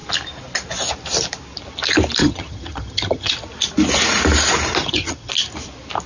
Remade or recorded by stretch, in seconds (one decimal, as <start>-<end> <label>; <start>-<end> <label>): 0.0-2.2 recorded; 2.2-3.3 remade; 3.3-4.8 recorded; 4.8-5.3 remade; 5.3-6.1 recorded